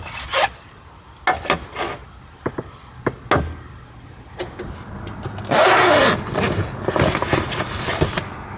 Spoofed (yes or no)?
no